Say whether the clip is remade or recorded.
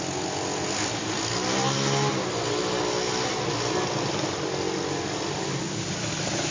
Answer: recorded